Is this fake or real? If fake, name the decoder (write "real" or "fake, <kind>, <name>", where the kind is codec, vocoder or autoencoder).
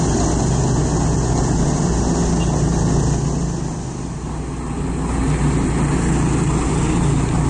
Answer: real